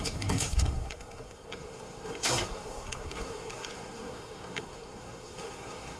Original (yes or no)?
no